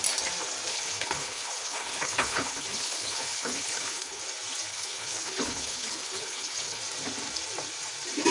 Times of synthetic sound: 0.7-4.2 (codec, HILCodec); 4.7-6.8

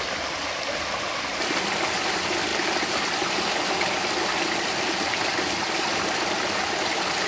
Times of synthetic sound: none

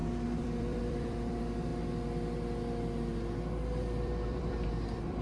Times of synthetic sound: 0.0-1.7 (vocoder, BigVGAN v2); 4.0-5.2

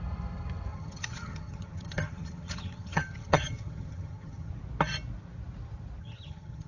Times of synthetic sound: 0.7-4.5 (vocoder, HiFi-GAN); 6.0-6.7

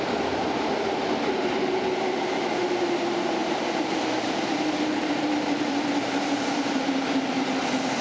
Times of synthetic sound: 3.4-7.5 (vocoder, BigVGAN v2)

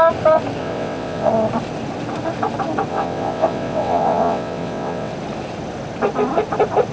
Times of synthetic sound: 0.6-1.3 (vocoder, WaveNeXt); 2.9-5.1